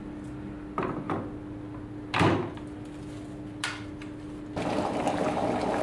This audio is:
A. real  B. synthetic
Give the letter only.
A